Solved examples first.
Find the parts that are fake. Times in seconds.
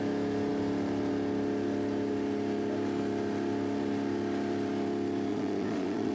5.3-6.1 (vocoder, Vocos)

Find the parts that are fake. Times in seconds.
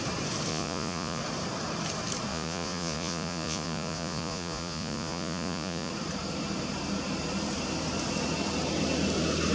0.5-1.2 (vocoder, Vocos); 2.3-5.9